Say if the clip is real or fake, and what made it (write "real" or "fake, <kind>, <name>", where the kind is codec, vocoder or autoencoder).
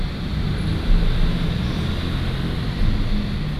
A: real